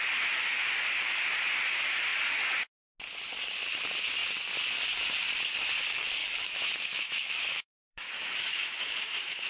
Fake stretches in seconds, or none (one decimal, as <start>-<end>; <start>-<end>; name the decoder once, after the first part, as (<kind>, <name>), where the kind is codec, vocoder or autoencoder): 6.2-9.5 (autoencoder, DAC-VAE)